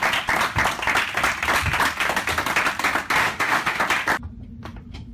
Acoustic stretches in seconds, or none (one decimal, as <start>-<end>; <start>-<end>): 0.0-3.2; 3.8-5.1